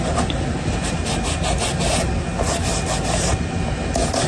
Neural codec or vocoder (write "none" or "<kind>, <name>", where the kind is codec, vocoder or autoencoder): none